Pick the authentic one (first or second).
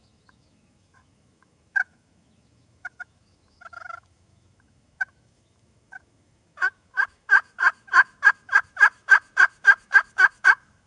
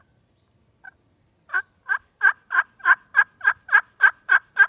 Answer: second